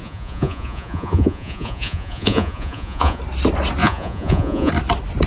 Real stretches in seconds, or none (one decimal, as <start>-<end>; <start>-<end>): 3.2-3.8; 4.7-5.3